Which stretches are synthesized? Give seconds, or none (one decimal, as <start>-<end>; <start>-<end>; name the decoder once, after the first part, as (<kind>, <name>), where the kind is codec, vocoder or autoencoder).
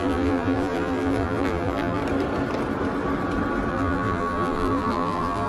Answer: 0.0-2.0 (vocoder, BigVGAN v2); 3.7-5.5